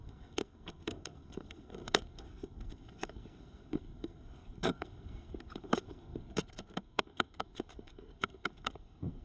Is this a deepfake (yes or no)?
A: yes